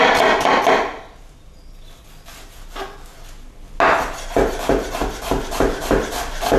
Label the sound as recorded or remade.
recorded